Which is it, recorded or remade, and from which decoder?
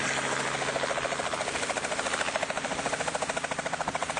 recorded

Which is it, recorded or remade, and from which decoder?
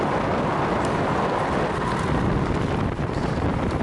recorded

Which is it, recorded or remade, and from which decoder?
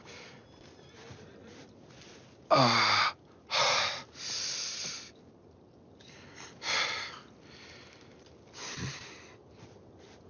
recorded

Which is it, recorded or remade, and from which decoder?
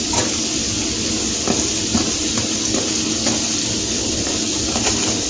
recorded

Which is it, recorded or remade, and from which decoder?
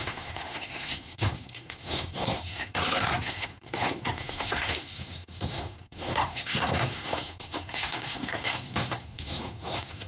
remade, codec, SNAC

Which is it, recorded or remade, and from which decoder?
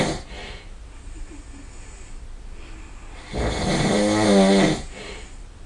recorded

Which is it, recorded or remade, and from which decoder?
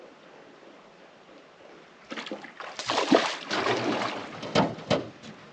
recorded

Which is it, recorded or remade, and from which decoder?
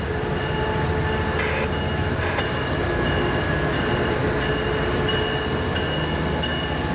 recorded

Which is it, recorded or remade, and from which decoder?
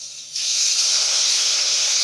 remade, codec, SNAC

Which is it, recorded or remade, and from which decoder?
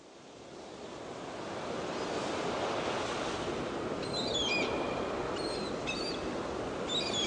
recorded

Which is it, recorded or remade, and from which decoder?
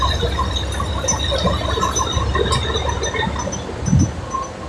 recorded